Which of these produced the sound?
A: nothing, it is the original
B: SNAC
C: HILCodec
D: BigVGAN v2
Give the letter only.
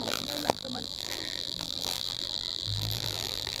D